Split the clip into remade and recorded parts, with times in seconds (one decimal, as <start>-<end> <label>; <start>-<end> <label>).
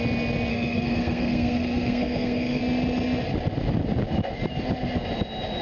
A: 0.0-0.5 recorded; 0.5-2.6 remade; 2.6-5.6 recorded